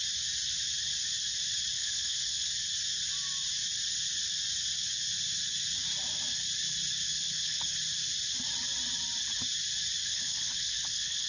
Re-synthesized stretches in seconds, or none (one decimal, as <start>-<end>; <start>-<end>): 1.8-2.5; 7.1-7.8; 10.0-11.3